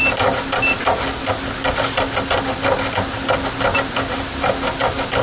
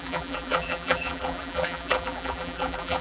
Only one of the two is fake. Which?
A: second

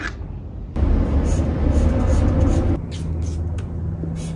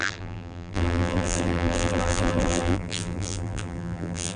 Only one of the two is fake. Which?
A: second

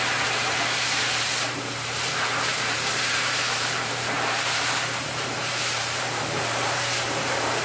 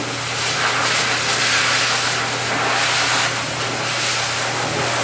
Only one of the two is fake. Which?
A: first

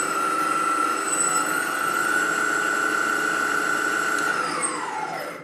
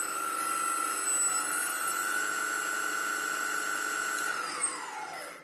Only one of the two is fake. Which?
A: first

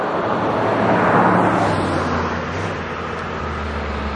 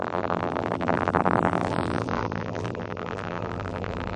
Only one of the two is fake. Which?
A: second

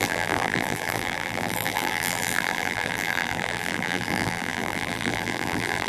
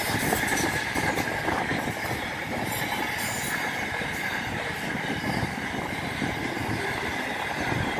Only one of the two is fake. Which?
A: first